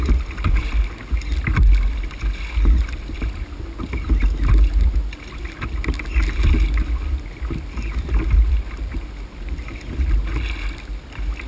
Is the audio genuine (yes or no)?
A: yes